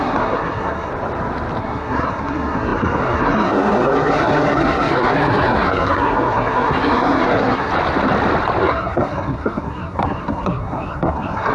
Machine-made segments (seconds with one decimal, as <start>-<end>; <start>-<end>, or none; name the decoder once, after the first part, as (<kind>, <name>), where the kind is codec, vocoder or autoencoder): 0.0-0.9 (codec, SNAC); 1.6-7.7; 8.6-11.5